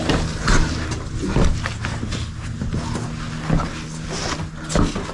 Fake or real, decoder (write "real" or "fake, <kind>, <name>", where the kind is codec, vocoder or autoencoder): real